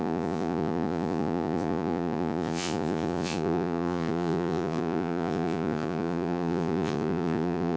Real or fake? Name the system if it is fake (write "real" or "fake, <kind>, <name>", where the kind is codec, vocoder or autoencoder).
fake, vocoder, Vocos